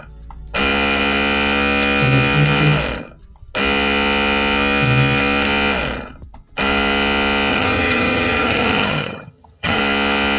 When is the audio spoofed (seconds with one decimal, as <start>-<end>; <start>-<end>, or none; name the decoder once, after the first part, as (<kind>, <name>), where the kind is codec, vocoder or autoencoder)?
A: 7.5-9.8 (vocoder, HiFi-GAN)